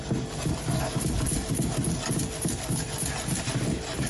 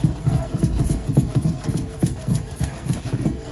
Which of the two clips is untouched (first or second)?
first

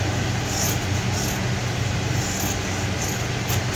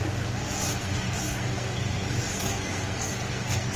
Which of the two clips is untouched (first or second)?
first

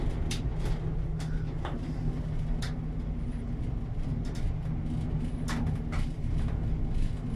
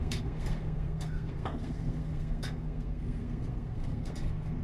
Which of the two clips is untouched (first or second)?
first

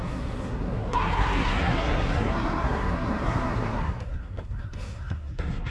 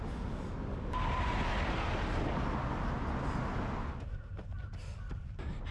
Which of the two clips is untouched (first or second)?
second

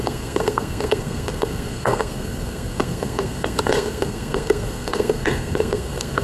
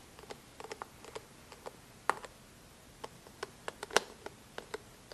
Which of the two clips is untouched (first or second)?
second